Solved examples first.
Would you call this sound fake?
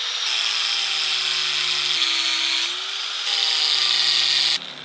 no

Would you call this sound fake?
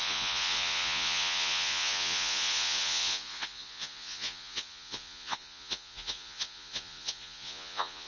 yes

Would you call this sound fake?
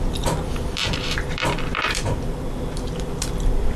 yes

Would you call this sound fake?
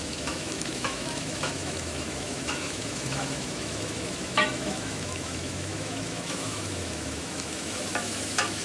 yes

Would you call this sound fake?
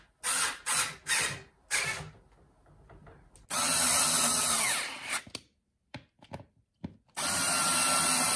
no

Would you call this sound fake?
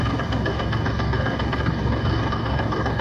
yes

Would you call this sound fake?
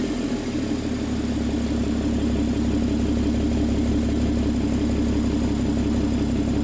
no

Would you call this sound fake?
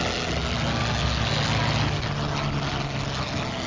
no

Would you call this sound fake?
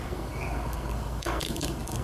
yes